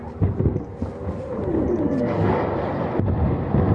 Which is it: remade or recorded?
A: recorded